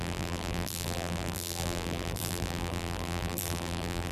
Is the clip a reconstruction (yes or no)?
yes